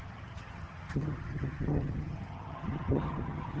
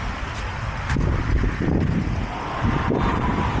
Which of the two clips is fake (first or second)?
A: first